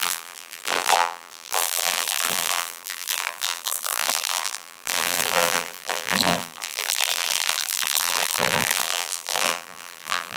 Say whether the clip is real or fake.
fake